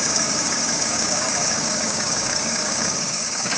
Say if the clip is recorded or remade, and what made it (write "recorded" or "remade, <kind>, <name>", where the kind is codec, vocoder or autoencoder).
remade, codec, DAC